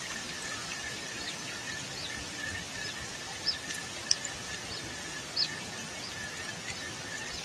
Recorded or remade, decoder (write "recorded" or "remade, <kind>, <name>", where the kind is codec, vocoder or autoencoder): recorded